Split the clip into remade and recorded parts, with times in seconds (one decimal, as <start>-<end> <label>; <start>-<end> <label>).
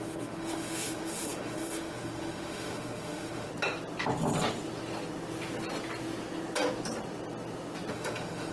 0.0-3.5 remade; 3.5-7.9 recorded; 7.9-8.5 remade